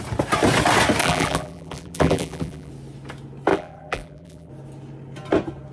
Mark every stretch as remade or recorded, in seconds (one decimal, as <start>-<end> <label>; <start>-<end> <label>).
0.0-1.0 recorded; 1.0-2.7 remade; 2.7-3.5 recorded; 3.5-4.5 remade; 4.5-5.7 recorded